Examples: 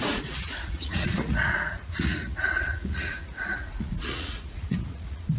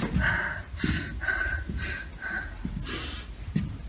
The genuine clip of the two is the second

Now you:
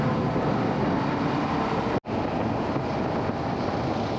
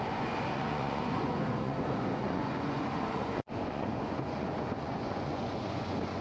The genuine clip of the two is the first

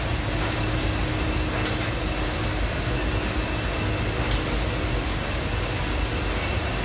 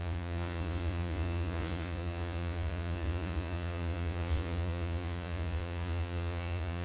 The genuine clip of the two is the first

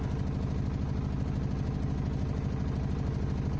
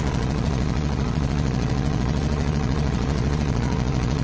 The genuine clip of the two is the first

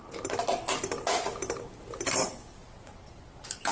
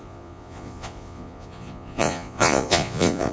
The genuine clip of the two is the first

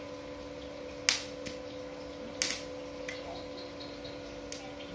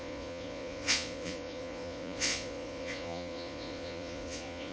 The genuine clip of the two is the first